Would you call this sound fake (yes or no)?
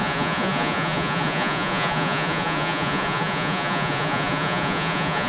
yes